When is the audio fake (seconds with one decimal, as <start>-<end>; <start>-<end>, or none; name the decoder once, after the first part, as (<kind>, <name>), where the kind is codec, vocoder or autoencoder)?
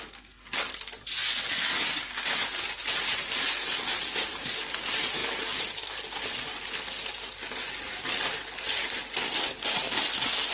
2.8-4.5 (vocoder, BigVGAN v2)